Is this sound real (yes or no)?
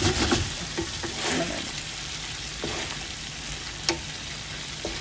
yes